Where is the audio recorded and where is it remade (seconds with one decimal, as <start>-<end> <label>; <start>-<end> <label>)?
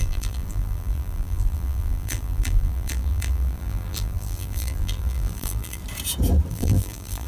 0.0-5.8 remade; 5.8-6.5 recorded; 6.5-7.3 remade